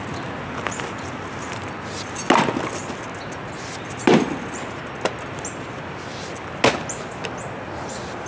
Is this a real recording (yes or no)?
yes